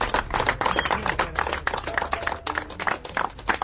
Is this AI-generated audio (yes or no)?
no